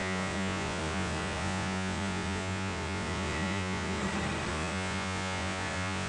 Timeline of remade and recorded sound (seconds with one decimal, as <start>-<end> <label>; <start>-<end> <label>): 0.0-4.0 remade; 4.0-4.5 recorded; 4.5-6.1 remade